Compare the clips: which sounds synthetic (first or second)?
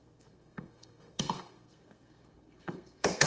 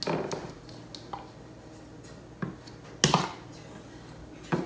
first